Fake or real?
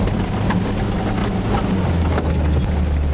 fake